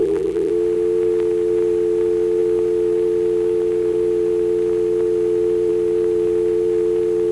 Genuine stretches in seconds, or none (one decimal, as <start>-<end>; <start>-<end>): 0.5-7.3